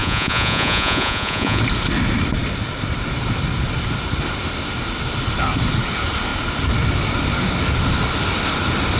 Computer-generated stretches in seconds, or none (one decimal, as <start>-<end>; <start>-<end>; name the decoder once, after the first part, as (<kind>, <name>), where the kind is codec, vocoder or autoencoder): 0.0-1.6 (vocoder, Vocos)